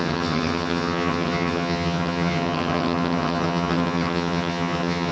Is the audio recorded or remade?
remade